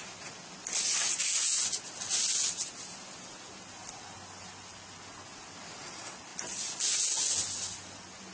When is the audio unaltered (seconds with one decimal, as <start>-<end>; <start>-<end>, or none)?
0.0-8.3